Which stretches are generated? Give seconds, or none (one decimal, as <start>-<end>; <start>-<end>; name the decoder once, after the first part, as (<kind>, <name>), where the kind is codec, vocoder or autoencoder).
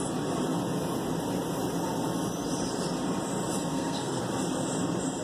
3.7-4.2 (codec, SNAC)